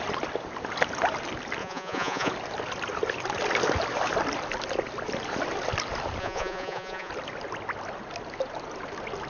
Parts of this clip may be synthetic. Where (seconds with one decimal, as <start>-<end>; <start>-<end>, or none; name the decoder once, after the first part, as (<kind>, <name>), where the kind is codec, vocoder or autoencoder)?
1.6-2.3 (vocoder, Vocos); 6.2-7.1